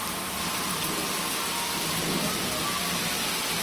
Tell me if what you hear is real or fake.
real